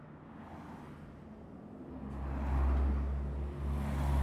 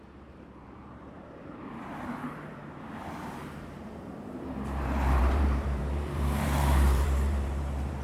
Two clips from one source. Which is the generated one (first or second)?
second